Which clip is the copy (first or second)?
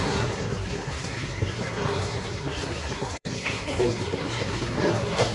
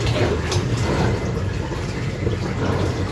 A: first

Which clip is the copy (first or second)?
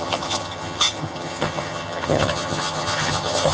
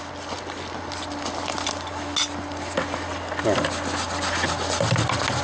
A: first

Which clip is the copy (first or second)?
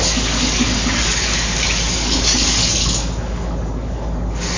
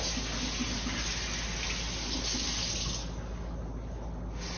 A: first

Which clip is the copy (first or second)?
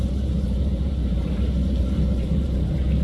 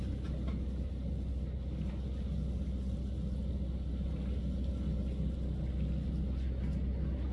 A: first